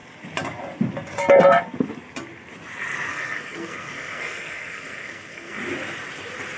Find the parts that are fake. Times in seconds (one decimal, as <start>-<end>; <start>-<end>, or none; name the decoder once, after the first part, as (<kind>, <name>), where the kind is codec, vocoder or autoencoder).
3.1-5.6 (codec, SNAC)